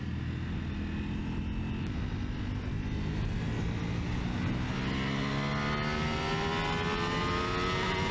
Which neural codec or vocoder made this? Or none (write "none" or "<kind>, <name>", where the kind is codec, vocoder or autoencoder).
none